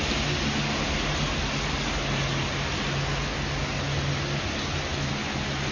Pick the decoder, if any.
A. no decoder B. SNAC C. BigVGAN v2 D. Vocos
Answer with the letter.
A